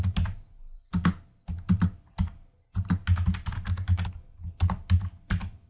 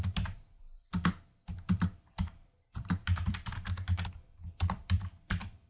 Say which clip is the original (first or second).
first